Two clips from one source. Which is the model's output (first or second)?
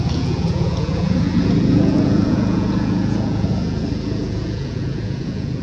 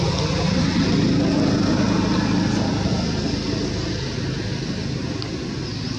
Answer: first